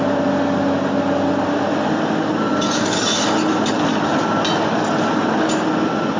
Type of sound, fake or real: real